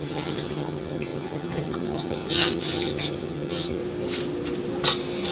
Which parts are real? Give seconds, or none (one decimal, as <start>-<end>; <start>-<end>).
3.8-5.3